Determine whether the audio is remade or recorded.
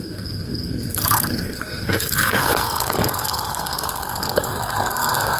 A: remade